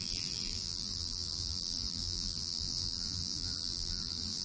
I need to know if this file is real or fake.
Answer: fake